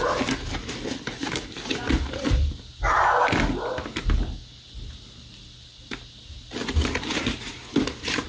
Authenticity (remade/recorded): recorded